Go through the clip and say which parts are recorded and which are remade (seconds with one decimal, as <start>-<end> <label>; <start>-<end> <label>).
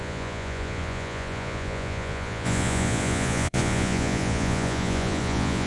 0.0-5.7 remade